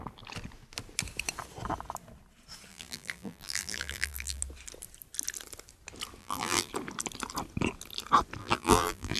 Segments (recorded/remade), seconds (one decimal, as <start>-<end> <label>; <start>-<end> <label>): 0.0-2.7 recorded; 2.7-4.4 remade; 4.4-6.2 recorded; 6.2-6.7 remade; 6.7-8.4 recorded; 8.4-9.2 remade